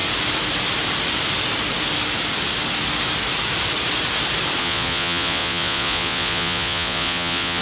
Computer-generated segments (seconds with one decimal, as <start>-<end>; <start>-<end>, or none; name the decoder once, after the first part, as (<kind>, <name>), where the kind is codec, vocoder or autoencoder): 4.6-7.6 (vocoder, Vocos)